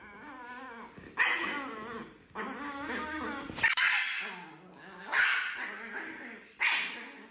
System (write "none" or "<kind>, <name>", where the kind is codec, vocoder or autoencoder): none